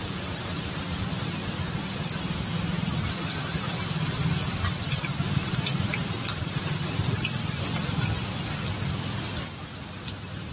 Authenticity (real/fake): real